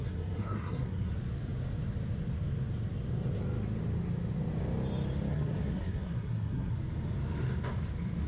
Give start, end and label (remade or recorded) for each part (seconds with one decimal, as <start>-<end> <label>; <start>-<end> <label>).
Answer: 0.0-1.1 remade; 1.1-5.3 recorded; 5.3-6.7 remade; 6.7-8.3 recorded